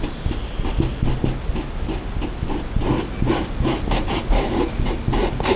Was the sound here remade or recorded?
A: recorded